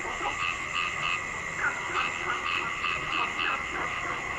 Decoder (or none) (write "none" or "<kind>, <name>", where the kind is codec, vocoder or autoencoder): none